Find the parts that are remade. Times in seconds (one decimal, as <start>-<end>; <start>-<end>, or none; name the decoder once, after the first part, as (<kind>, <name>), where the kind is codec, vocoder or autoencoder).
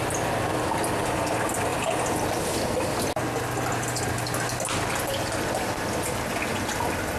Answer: none